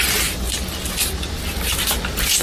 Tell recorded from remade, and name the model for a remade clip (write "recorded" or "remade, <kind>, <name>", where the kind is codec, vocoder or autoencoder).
recorded